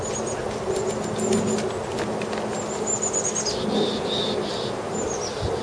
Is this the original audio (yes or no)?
yes